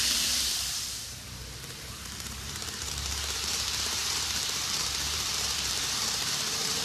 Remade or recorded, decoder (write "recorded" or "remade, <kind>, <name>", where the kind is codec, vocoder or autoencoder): remade, vocoder, BigVGAN v2